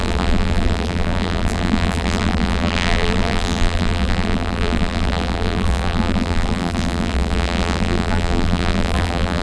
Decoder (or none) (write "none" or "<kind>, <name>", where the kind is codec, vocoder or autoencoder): vocoder, BigVGAN v2